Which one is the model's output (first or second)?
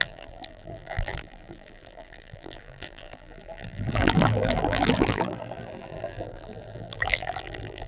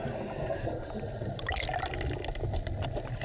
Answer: first